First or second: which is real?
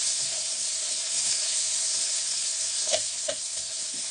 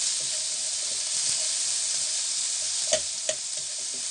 second